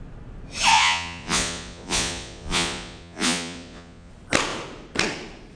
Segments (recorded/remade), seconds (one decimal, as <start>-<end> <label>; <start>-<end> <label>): 0.0-0.7 recorded; 0.7-4.1 remade; 4.1-5.6 recorded